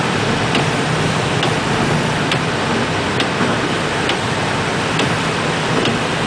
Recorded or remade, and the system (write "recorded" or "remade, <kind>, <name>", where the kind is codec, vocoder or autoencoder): recorded